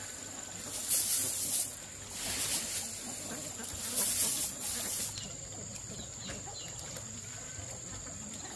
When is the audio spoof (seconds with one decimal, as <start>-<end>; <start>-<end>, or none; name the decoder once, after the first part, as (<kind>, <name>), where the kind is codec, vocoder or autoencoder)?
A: none